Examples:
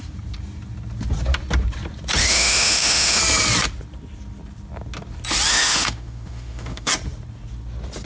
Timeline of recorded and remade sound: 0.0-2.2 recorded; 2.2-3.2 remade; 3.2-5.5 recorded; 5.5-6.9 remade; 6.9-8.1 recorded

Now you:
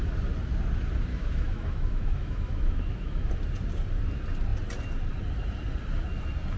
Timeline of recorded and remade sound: 0.0-1.1 recorded; 1.1-3.3 remade; 3.3-6.6 recorded

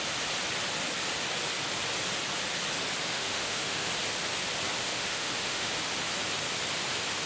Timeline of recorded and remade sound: 0.0-3.1 recorded; 3.1-3.9 remade; 3.9-4.8 recorded; 4.8-5.7 remade; 5.7-7.3 recorded

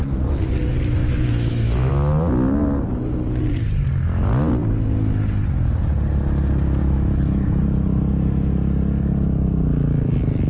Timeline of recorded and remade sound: 0.0-1.0 recorded; 1.0-1.9 remade; 1.9-6.8 recorded; 6.8-7.6 remade; 7.6-10.5 recorded